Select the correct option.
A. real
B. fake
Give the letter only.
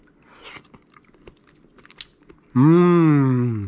A